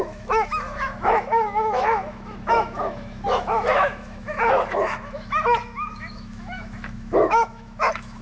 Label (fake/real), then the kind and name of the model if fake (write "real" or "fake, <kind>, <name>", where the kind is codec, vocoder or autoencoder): fake, autoencoder, DAC-VAE